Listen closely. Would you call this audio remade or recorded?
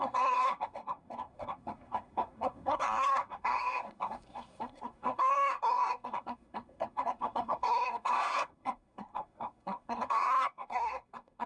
remade